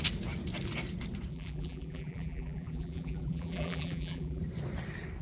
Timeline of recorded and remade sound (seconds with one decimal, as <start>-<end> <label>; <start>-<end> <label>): 0.0-1.3 recorded; 1.3-4.4 remade; 4.4-5.2 recorded

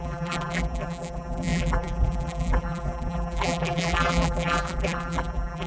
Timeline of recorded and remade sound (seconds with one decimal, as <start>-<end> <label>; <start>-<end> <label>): 0.0-5.7 remade

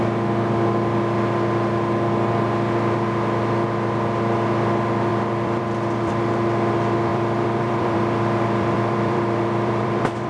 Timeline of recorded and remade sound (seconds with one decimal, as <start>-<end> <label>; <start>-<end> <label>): 0.0-5.1 recorded; 5.1-6.1 remade; 6.1-7.1 recorded; 7.1-10.3 remade